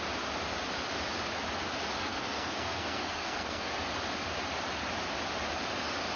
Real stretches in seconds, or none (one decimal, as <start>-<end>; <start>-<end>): 0.0-1.9; 3.7-6.2